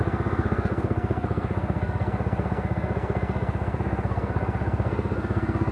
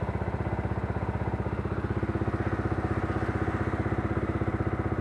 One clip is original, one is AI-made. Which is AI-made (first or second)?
first